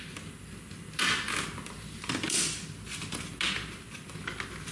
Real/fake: real